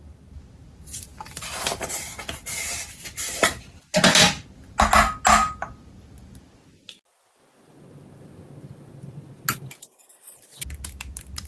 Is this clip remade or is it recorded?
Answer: recorded